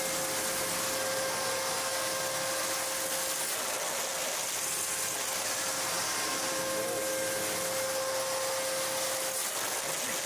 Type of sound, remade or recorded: recorded